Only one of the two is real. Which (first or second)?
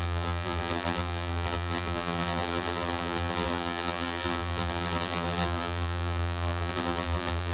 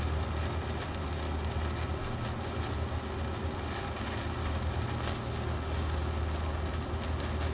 second